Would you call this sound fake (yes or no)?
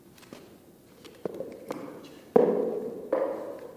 no